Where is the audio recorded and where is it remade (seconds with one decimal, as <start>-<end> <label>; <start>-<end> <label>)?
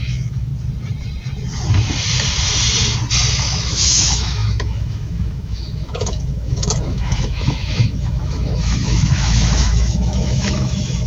0.0-0.5 remade; 0.5-3.3 recorded; 3.3-11.1 remade